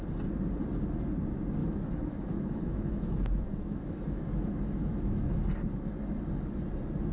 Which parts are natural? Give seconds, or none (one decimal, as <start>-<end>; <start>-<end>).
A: 0.0-1.6; 5.4-7.1